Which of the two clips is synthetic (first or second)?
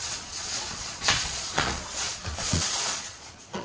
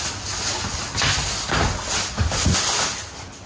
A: first